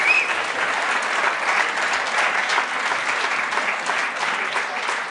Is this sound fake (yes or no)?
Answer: no